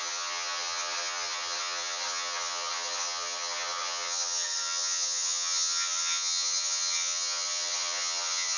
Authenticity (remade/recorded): remade